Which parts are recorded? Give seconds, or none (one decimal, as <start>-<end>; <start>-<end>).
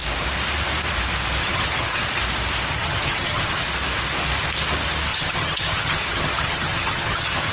0.0-1.4; 2.0-2.7; 3.5-5.1